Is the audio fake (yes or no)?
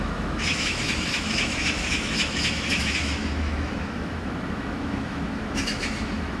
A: yes